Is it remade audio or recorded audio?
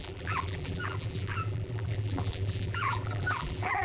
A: remade